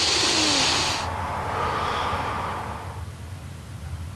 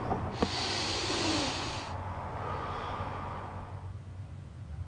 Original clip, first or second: first